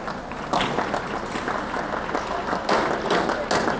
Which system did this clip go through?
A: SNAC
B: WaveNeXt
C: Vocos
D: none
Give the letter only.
D